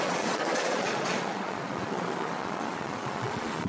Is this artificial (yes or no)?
yes